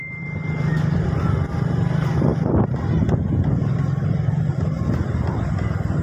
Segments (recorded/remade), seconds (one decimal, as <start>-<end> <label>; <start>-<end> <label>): 0.0-6.0 recorded